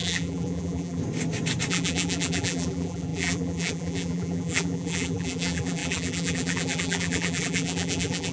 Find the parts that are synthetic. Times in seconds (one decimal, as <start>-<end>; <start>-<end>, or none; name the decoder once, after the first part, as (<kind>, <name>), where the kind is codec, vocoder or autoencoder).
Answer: 0.0-1.0 (vocoder, BigVGAN v2); 1.7-8.3

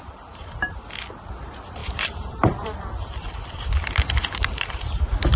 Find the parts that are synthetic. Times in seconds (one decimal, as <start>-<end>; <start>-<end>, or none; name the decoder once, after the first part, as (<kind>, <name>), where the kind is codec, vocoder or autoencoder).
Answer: 1.8-5.0 (vocoder, BigVGAN v2)

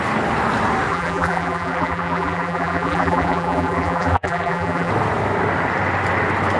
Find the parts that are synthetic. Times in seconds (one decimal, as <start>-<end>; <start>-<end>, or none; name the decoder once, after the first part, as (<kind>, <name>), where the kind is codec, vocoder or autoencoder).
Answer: 0.9-4.9 (vocoder, BigVGAN v2)

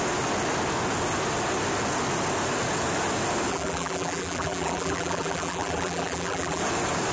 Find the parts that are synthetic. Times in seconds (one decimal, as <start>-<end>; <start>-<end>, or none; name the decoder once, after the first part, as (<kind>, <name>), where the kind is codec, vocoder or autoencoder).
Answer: 3.5-6.6 (vocoder, BigVGAN v2)